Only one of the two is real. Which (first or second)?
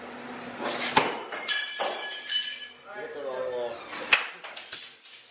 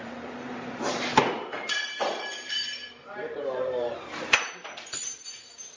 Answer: first